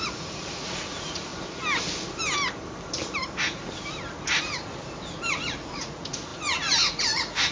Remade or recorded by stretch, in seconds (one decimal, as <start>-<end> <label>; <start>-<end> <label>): 0.0-1.3 remade; 1.3-5.3 recorded; 5.3-7.5 remade